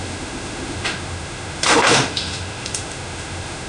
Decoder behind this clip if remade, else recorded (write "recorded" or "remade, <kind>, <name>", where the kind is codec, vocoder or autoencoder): remade, autoencoder, DAC-VAE